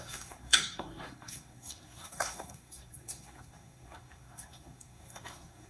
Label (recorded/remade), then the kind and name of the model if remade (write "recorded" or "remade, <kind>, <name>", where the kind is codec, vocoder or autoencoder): remade, codec, SNAC